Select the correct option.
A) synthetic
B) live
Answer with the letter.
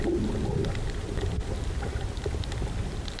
B